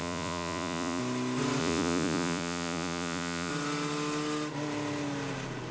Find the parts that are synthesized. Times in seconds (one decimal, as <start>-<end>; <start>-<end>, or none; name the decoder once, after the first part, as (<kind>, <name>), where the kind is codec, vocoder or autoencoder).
0.0-1.0 (vocoder, Vocos); 1.6-3.5